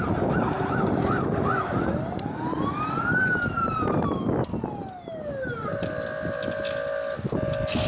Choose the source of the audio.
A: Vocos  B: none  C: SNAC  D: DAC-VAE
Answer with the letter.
B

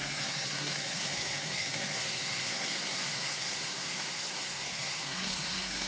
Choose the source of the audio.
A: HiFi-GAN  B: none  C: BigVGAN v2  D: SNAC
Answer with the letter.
D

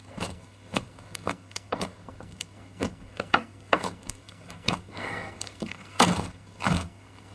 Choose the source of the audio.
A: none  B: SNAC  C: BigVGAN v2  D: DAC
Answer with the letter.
B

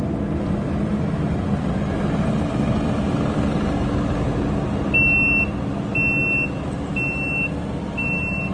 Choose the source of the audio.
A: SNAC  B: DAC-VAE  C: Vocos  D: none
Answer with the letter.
D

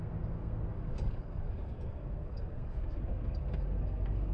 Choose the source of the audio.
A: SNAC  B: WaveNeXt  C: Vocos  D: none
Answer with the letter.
A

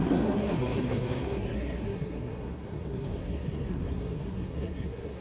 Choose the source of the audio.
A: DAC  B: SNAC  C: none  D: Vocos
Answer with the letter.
B